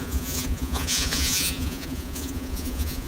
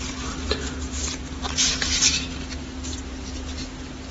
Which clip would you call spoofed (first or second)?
first